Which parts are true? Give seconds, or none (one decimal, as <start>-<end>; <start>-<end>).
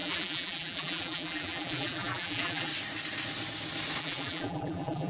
2.7-4.0